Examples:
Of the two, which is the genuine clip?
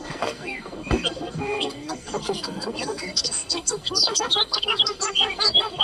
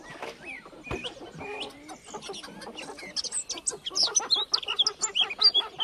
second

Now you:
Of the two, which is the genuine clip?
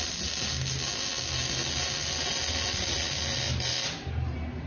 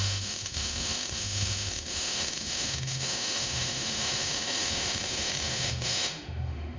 first